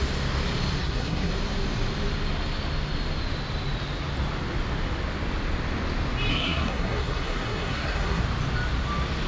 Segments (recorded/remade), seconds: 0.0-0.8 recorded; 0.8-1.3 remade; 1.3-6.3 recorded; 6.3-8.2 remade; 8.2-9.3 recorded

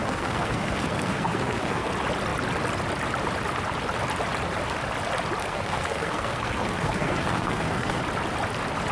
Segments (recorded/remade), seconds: 0.0-1.9 remade; 1.9-5.4 recorded; 5.4-8.0 remade; 8.0-8.9 recorded

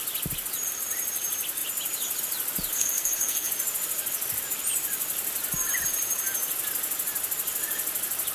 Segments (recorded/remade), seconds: 0.0-2.7 recorded; 2.7-3.5 remade; 3.5-8.3 recorded

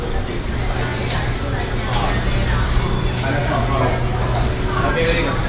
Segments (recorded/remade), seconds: 0.0-5.5 recorded